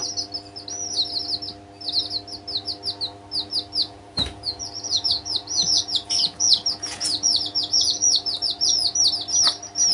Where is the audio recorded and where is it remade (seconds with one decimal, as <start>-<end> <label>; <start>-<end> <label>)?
0.0-3.8 recorded; 3.8-9.0 remade; 9.0-9.9 recorded